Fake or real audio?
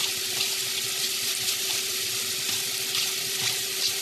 fake